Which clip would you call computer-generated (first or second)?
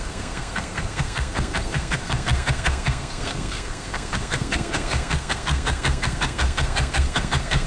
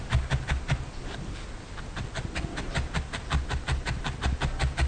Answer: first